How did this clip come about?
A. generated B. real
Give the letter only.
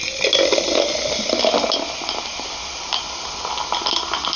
B